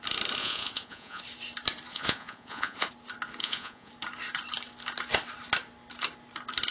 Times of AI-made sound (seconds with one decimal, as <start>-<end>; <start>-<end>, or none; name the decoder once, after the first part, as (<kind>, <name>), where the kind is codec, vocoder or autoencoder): 0.4-1.2 (vocoder, Vocos); 1.9-2.9; 3.4-3.9